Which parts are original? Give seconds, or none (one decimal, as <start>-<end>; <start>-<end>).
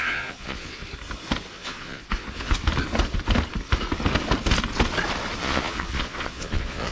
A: 0.8-1.5; 2.6-5.4